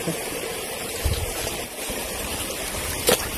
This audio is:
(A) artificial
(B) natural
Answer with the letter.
A